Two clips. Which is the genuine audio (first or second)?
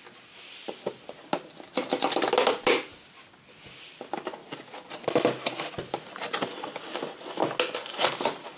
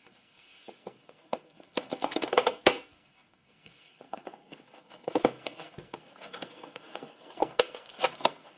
first